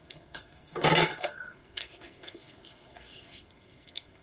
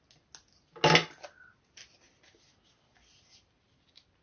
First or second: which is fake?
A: first